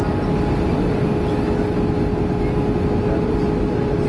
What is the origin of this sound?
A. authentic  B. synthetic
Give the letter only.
A